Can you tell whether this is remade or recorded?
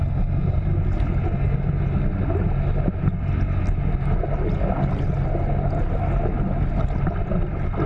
recorded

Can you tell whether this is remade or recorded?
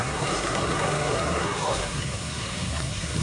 remade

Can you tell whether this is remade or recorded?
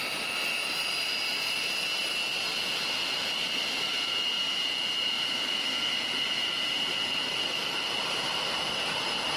remade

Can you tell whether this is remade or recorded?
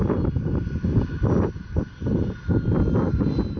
recorded